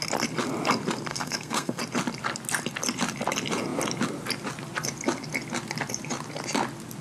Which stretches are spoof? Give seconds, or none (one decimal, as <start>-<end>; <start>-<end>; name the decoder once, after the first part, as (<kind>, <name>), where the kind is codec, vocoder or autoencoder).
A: 1.1-1.8 (codec, SNAC)